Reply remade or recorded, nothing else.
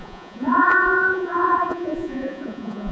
remade